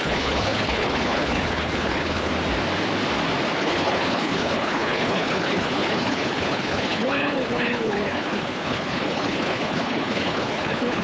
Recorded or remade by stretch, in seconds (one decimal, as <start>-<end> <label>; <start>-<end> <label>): 0.0-2.3 remade; 2.3-3.6 recorded; 3.6-11.0 remade